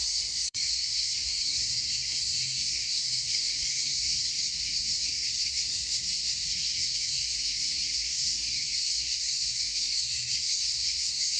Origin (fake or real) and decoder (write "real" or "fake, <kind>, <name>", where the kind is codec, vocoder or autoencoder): fake, codec, SNAC